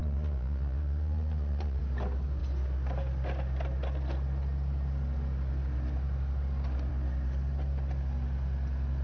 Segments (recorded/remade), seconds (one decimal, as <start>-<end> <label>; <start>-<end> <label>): 0.0-1.8 remade; 1.8-9.0 recorded